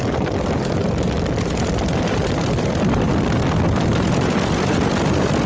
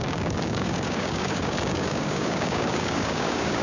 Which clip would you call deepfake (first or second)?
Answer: second